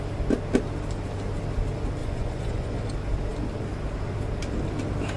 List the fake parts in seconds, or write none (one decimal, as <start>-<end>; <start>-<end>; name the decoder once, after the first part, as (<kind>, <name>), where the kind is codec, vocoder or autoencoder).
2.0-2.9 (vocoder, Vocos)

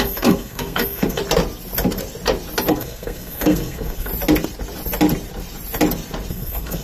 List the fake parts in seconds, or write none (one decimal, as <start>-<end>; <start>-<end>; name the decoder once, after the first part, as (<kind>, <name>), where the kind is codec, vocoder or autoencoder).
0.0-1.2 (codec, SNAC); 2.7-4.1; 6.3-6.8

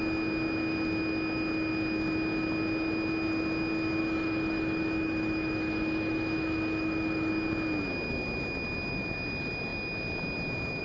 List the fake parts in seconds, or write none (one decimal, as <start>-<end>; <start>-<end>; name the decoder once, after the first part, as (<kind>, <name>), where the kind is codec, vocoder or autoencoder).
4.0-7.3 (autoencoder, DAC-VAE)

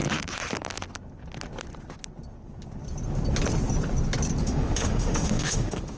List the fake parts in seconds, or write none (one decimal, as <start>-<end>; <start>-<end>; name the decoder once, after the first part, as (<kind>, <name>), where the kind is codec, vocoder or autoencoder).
4.4-6.0 (autoencoder, DAC-VAE)